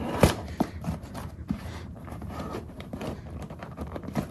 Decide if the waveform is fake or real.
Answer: fake